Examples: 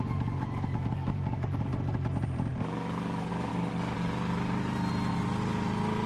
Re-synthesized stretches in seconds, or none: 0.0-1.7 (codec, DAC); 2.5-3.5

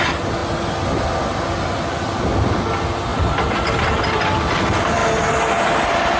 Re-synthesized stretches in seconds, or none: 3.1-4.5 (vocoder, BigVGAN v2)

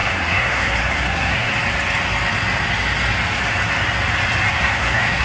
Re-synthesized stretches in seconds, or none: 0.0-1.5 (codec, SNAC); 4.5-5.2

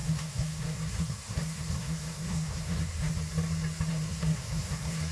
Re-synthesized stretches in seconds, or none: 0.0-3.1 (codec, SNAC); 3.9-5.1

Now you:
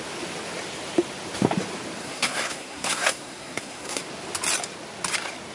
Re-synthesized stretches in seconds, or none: 2.0-4.0 (codec, SNAC)

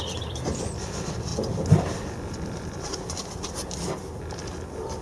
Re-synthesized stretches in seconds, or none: none

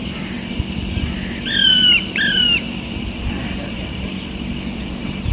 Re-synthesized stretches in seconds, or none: none

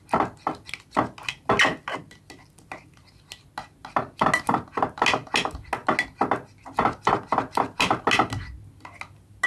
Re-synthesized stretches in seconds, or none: none